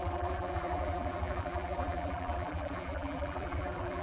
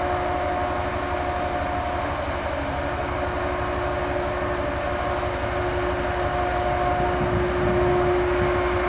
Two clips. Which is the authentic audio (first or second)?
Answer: second